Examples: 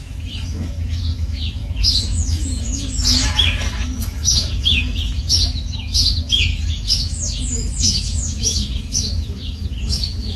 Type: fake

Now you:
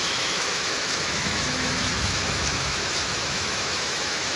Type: fake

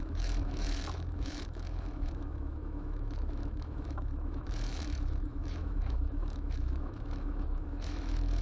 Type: fake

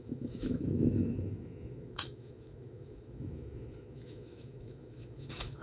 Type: fake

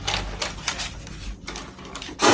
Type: real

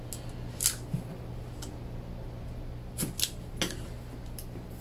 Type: real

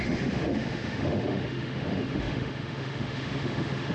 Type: fake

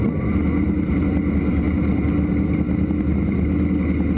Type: real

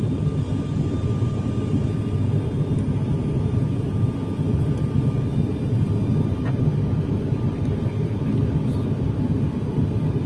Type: real